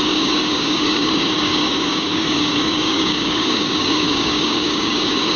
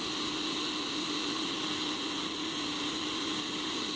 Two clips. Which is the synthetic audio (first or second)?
first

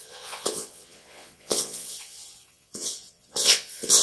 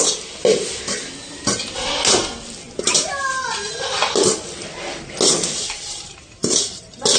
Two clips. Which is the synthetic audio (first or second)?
first